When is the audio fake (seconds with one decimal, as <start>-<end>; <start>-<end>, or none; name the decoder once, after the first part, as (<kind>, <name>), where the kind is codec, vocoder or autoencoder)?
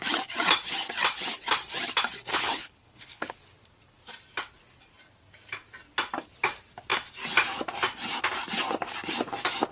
2.3-3.3 (codec, HILCodec)